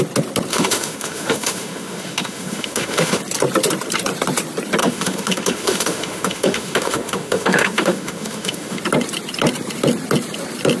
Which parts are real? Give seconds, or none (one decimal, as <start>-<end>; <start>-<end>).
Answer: 0.0-0.5; 3.2-4.8; 8.8-10.8